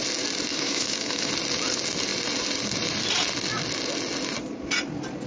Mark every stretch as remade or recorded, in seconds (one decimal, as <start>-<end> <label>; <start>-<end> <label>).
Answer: 0.0-0.5 recorded; 0.5-1.3 remade; 1.3-5.3 recorded